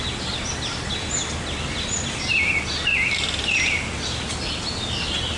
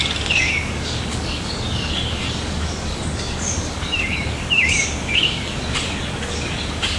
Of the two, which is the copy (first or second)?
second